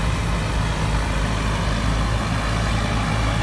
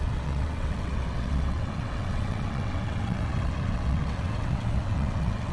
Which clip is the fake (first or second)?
second